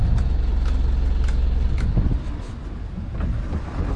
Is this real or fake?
real